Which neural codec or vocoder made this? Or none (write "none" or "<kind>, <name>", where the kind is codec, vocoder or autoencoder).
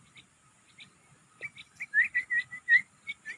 none